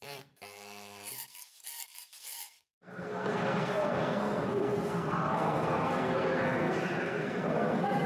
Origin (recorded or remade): remade